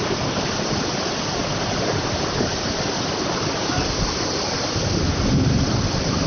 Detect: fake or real real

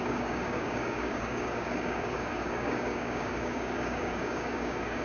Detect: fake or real fake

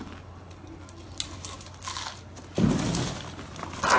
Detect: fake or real real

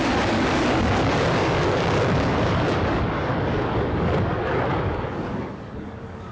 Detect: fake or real fake